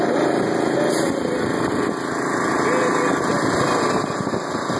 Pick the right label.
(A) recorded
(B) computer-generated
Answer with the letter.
A